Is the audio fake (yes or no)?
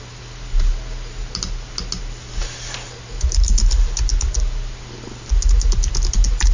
no